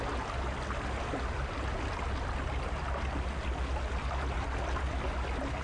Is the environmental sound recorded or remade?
recorded